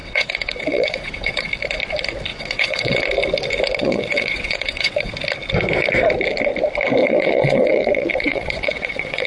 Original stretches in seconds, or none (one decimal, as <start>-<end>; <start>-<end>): 1.5-2.3; 3.0-3.8; 5.1-7.0